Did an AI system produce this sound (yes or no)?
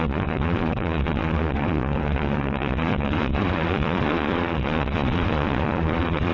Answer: yes